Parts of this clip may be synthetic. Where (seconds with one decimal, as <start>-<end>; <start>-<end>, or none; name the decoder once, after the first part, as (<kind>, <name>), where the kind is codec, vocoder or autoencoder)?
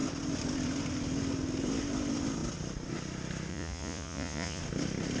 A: 3.5-4.6 (vocoder, Vocos)